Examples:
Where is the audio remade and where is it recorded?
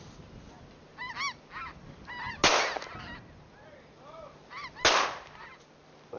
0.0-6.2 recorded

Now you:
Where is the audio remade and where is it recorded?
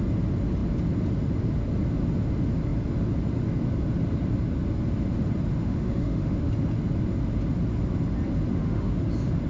0.0-5.6 recorded; 5.6-6.5 remade; 6.5-8.5 recorded; 8.5-9.0 remade; 9.0-9.5 recorded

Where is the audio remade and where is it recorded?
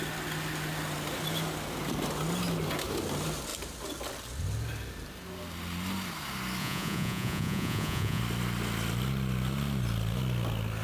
0.0-6.6 recorded; 6.6-8.2 remade; 8.2-10.8 recorded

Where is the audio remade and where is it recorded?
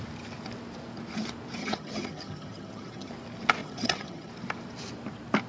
0.0-1.6 recorded; 1.6-3.1 remade; 3.1-3.6 recorded; 3.6-4.3 remade; 4.3-5.5 recorded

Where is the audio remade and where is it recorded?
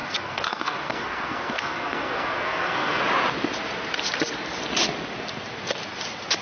0.0-3.0 remade; 3.0-6.4 recorded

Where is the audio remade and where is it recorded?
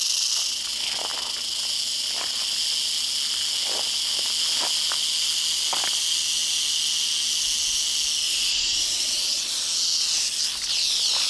0.0-8.5 recorded; 8.5-9.5 remade; 9.5-11.3 recorded